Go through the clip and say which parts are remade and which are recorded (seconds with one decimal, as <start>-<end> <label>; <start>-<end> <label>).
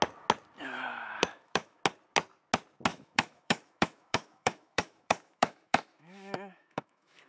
0.0-0.9 recorded; 0.9-1.8 remade; 1.8-2.9 recorded; 2.9-7.3 remade